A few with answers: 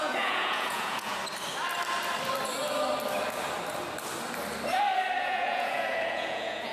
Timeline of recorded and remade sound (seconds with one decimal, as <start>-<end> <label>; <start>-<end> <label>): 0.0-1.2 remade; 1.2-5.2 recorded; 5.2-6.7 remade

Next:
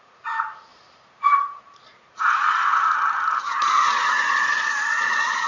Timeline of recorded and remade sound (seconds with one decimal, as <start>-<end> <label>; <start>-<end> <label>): 0.0-5.5 remade

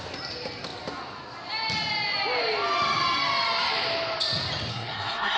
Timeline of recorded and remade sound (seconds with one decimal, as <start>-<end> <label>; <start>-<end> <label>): 0.0-4.7 recorded; 4.7-5.4 remade